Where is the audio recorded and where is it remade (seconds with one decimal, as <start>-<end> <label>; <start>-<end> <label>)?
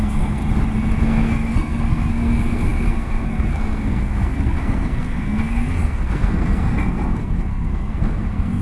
0.0-0.4 remade; 0.4-1.0 recorded; 1.0-8.6 remade